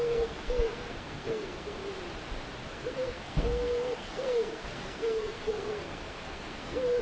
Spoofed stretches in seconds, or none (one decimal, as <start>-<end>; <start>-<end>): 0.0-1.8; 2.7-7.0